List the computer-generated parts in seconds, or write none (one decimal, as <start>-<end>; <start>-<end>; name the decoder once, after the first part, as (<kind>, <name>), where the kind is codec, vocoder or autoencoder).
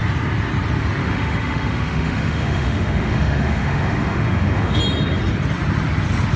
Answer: 1.0-4.8 (autoencoder, DAC-VAE)